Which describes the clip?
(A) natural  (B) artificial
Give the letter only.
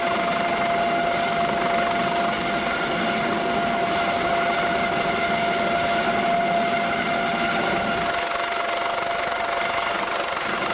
A